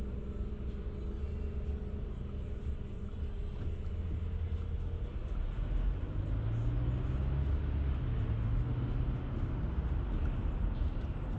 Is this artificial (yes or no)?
no